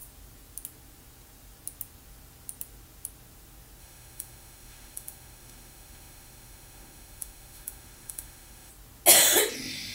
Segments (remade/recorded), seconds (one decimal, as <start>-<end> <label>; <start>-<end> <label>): 0.0-3.8 recorded; 3.8-8.7 remade; 8.7-9.9 recorded